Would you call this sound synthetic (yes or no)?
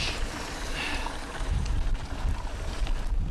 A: no